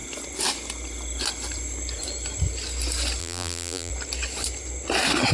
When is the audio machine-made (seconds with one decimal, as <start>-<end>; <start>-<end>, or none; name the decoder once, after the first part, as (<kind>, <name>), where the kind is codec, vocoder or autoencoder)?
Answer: 3.2-3.9 (vocoder, BigVGAN v2)